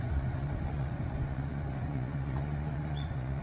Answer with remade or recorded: remade